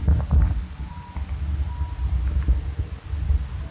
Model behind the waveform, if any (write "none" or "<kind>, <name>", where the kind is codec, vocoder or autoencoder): none